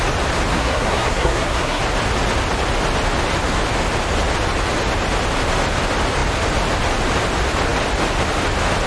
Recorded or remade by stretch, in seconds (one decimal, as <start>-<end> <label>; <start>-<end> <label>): 0.0-0.5 recorded; 0.5-1.8 remade; 1.8-8.9 recorded